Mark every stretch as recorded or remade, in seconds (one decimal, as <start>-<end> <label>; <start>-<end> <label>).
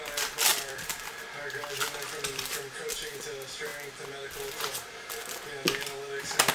0.0-0.5 recorded; 0.5-1.3 remade; 1.3-2.3 recorded; 2.3-3.1 remade; 3.1-6.5 recorded